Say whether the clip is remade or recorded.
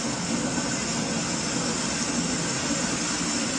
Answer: recorded